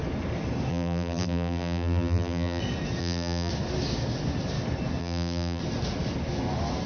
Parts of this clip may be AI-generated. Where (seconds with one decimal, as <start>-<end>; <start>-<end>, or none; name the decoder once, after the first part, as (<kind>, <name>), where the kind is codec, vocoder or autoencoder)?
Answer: 0.7-2.6 (vocoder, BigVGAN v2); 3.0-3.5; 5.0-5.6